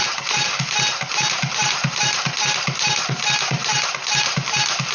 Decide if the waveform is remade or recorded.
recorded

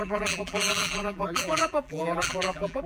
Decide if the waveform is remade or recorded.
remade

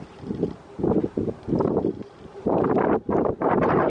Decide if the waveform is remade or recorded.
remade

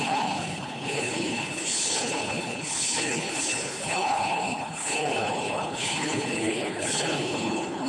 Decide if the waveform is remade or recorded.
remade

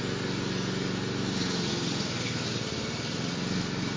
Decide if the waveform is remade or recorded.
recorded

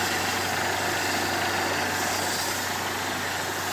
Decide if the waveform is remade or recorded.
recorded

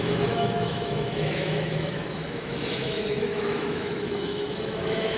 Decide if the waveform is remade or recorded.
remade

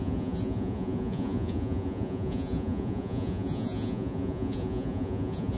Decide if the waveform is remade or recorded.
remade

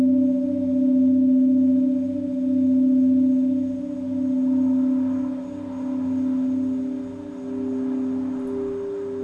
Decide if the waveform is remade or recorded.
recorded